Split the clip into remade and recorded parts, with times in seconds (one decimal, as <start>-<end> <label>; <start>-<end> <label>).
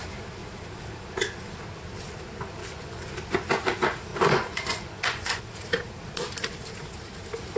0.0-2.6 recorded; 2.6-3.1 remade; 3.1-4.1 recorded; 4.1-5.4 remade; 5.4-7.6 recorded